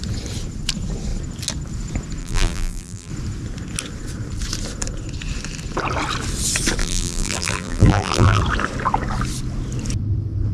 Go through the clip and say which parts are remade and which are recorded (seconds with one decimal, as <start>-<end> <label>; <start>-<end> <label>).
0.0-2.2 recorded; 2.2-3.1 remade; 3.1-6.8 recorded; 6.8-8.4 remade; 8.4-10.5 recorded